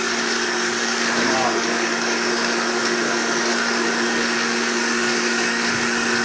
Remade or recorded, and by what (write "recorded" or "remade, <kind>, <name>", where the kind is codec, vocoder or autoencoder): remade, codec, DAC